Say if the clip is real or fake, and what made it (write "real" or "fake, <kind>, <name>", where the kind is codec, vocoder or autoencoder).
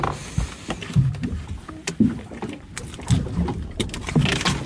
real